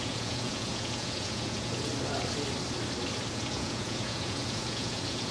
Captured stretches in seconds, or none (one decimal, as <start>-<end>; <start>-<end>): 1.9-3.3